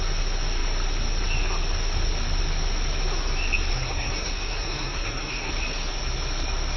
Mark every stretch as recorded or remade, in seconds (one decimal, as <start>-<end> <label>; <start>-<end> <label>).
0.0-3.7 recorded; 3.7-5.5 remade; 5.5-6.8 recorded

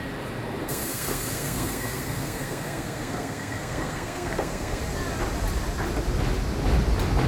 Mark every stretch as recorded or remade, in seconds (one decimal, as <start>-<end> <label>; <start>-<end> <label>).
0.0-0.6 recorded; 0.6-4.8 remade; 4.8-7.3 recorded

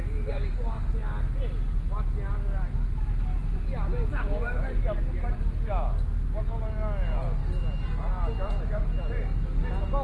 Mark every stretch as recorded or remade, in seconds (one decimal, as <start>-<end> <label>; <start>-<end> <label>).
0.0-10.0 recorded

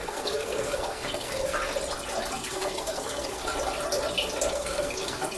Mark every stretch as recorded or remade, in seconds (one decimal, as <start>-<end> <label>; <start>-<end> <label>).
0.0-1.6 remade; 1.6-2.5 recorded; 2.5-3.5 remade; 3.5-4.5 recorded; 4.5-5.4 remade

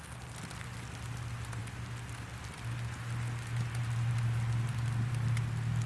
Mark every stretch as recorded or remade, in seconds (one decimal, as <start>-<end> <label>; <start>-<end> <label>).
0.0-5.9 recorded

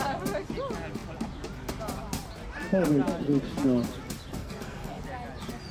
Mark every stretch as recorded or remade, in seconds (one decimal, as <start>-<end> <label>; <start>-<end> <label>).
0.0-4.4 recorded; 4.4-5.0 remade; 5.0-5.7 recorded